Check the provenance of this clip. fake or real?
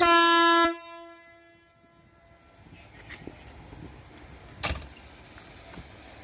real